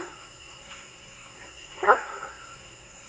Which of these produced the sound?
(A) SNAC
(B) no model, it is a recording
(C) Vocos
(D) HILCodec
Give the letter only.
A